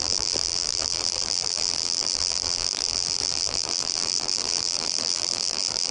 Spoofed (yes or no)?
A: yes